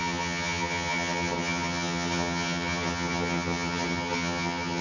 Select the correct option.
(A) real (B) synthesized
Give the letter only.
B